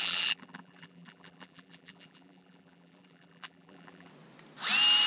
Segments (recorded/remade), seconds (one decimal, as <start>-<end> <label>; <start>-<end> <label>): 0.0-4.1 remade; 4.1-5.1 recorded